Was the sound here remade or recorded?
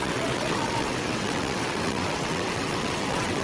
remade